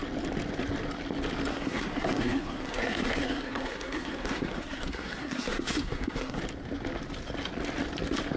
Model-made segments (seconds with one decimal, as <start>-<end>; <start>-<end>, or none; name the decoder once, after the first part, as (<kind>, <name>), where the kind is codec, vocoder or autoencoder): 1.5-6.4 (codec, SNAC)